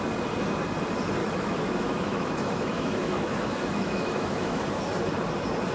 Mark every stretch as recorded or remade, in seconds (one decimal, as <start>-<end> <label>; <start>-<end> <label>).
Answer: 0.0-1.2 recorded; 1.2-4.6 remade; 4.6-5.7 recorded